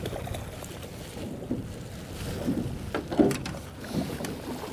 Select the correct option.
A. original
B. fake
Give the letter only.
A